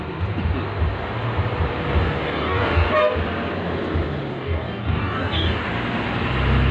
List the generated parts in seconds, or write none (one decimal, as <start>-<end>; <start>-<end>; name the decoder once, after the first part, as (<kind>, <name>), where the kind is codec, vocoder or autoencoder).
2.0-2.9 (codec, DAC); 4.3-5.6